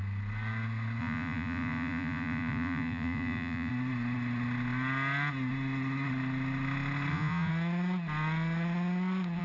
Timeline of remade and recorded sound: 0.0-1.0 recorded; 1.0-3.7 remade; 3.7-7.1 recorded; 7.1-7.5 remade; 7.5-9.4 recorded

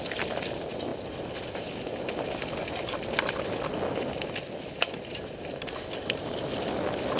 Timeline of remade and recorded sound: 0.0-7.2 recorded

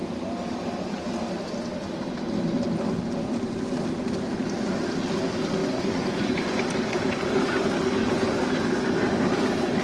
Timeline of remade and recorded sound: 0.0-5.6 recorded; 5.6-6.6 remade; 6.6-9.8 recorded

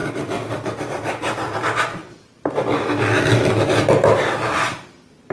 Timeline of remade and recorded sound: 0.0-5.3 recorded